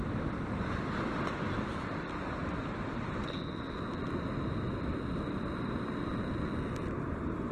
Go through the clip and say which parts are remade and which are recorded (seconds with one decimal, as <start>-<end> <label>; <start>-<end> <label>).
0.0-2.4 recorded; 2.4-3.3 remade; 3.3-4.0 recorded; 4.0-6.1 remade; 6.1-7.5 recorded